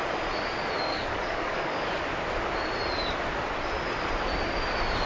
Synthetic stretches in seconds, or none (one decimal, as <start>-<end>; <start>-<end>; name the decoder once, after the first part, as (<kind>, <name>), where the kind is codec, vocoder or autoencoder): 0.9-2.0 (codec, DAC)